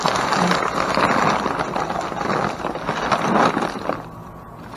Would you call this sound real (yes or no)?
yes